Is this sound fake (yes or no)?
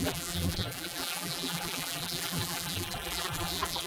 yes